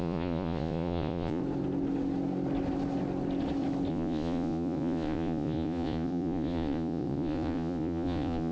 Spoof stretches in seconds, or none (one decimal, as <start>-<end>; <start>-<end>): 0.0-1.4; 3.9-8.5